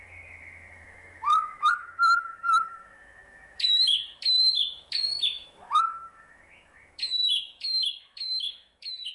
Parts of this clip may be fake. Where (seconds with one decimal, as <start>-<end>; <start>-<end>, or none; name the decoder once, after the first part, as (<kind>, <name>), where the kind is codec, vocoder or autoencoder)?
0.0-9.1 (autoencoder, DAC-VAE)